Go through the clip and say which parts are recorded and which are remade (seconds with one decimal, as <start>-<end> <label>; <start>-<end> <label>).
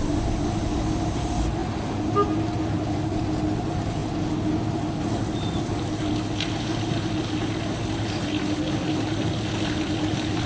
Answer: 0.0-10.5 recorded